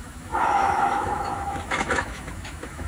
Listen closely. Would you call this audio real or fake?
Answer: fake